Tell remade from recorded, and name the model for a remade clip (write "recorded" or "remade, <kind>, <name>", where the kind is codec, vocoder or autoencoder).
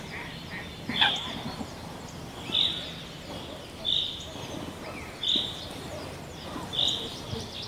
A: recorded